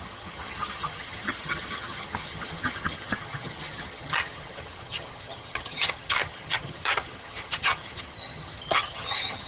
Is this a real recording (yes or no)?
no